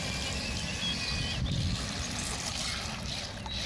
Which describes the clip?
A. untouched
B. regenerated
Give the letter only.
A